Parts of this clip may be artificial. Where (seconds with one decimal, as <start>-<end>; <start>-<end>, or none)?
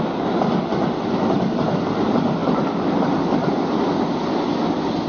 none